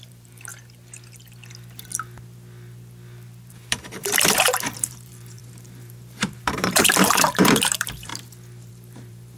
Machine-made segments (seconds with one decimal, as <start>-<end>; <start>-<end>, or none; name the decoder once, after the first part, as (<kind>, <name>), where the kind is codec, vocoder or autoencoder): 0.0-0.5 (vocoder, BigVGAN v2); 3.5-8.1; 8.7-9.4